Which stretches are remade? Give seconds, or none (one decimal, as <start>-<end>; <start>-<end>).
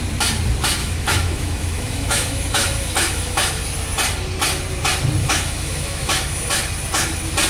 0.8-3.6; 5.2-6.5